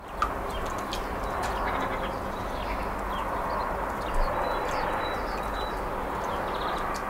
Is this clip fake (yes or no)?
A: no